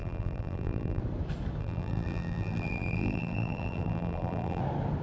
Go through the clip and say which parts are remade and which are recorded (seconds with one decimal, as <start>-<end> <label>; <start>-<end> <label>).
0.0-1.0 remade; 1.0-1.6 recorded; 1.6-4.6 remade; 4.6-5.0 recorded